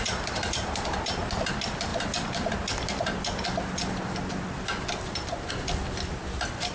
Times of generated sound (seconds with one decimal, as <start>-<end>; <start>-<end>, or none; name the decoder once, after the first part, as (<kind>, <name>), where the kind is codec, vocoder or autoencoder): none